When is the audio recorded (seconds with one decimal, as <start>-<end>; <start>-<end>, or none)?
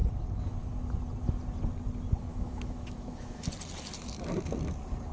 0.0-2.3; 3.4-5.1